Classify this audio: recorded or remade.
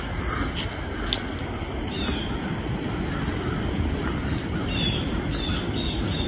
recorded